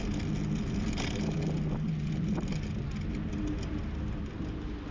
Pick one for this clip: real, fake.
real